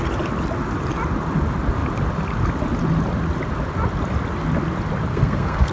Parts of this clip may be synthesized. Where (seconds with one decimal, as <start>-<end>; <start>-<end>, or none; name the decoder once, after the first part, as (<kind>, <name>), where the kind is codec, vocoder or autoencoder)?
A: 5.1-5.7 (codec, SNAC)